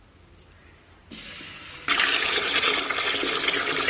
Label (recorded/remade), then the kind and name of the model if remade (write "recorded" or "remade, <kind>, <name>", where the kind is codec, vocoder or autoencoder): recorded